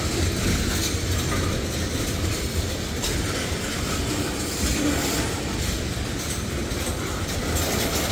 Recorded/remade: recorded